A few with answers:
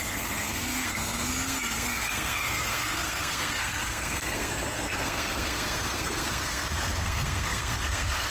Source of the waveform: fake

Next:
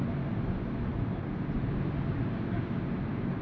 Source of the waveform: real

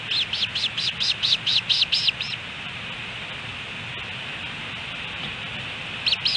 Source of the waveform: real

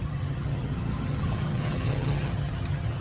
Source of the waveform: fake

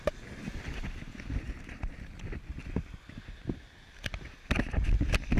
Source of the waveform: real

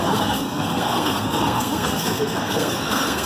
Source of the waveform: fake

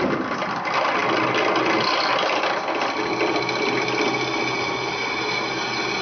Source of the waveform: real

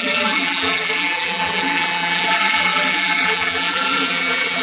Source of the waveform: fake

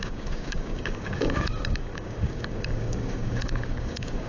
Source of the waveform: fake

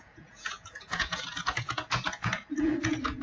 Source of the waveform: fake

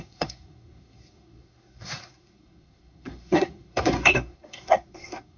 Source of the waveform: fake